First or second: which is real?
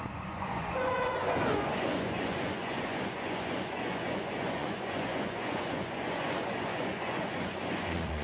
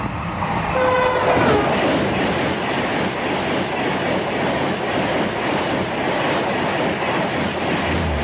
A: second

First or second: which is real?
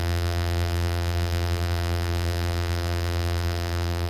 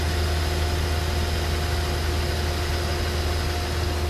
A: second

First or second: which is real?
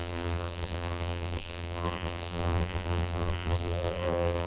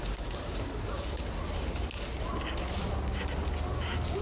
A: second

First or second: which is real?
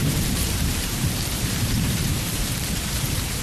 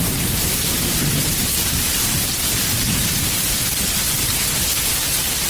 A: second